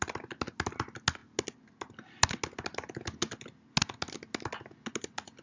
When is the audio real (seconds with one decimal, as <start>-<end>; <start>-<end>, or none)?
0.0-5.4